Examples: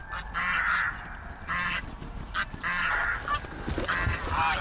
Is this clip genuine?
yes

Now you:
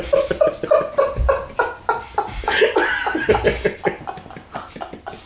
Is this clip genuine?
yes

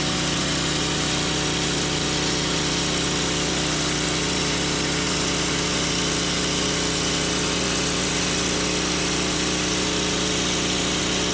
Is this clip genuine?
yes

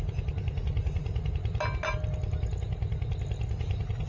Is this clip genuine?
yes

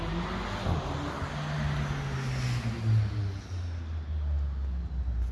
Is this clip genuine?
yes